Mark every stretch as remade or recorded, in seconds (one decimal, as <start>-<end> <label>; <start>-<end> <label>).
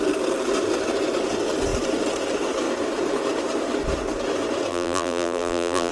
0.0-4.7 recorded; 4.7-5.9 remade